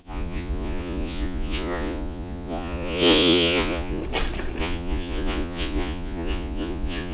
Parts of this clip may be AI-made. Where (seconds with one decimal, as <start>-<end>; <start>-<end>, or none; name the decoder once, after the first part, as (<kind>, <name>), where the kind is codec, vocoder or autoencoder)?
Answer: 0.0-4.0 (vocoder, Vocos); 4.6-7.1

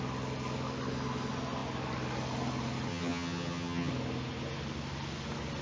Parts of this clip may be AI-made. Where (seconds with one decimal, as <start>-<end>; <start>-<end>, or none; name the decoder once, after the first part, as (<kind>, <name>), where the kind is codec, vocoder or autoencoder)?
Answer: 2.9-3.9 (vocoder, HiFi-GAN)

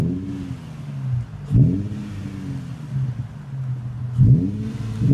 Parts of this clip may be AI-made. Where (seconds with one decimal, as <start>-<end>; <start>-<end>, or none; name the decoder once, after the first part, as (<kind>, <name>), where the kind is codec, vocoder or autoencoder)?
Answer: none

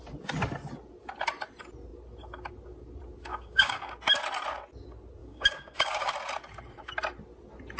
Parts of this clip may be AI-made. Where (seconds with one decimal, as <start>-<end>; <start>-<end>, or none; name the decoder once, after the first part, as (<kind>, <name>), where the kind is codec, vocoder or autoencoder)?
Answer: 3.3-3.9 (codec, DAC); 5.2-6.1

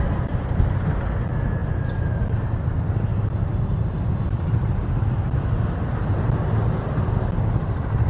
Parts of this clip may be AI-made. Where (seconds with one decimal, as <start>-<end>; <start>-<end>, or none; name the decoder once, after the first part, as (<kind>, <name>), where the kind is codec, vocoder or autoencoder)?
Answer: none

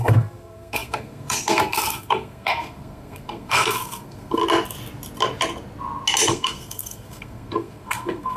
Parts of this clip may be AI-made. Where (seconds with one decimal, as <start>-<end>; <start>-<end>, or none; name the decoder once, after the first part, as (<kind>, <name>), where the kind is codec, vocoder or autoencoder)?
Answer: 0.0-4.4 (codec, SNAC); 6.3-8.4

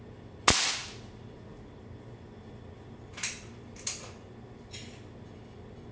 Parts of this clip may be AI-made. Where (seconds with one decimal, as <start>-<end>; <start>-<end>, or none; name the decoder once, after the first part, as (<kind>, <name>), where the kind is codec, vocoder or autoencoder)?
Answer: none